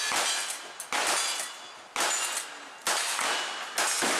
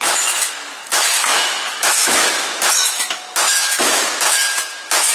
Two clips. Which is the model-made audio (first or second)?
second